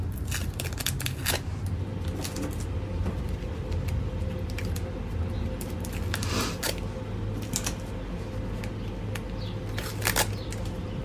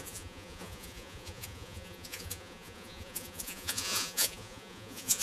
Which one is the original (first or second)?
first